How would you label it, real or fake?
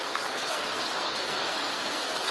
fake